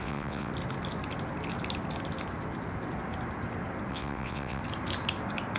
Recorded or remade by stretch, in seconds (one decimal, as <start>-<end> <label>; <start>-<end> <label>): 0.0-0.5 remade; 0.5-3.9 recorded; 3.9-4.6 remade; 4.6-5.6 recorded